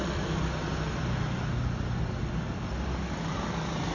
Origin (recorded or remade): recorded